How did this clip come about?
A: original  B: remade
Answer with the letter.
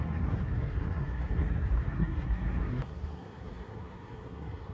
B